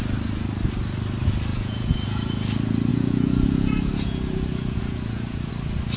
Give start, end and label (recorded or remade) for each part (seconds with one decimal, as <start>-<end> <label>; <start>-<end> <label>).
0.0-1.5 recorded; 1.5-2.3 remade; 2.3-2.9 recorded; 2.9-5.5 remade; 5.5-6.0 recorded